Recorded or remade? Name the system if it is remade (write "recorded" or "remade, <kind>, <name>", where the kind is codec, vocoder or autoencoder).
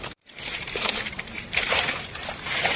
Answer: remade, vocoder, BigVGAN v2